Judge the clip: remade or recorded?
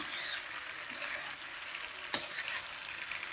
recorded